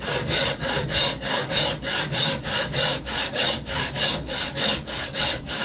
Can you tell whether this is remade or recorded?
remade